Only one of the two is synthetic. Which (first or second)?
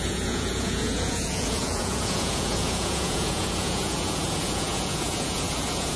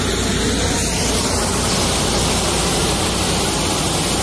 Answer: first